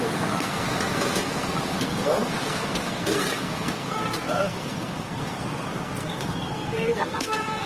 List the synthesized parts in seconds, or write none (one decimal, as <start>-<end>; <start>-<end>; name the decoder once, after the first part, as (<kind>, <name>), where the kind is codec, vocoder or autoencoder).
0.0-7.7 (codec, SNAC)